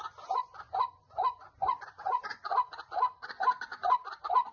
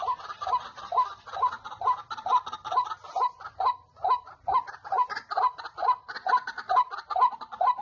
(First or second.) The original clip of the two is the second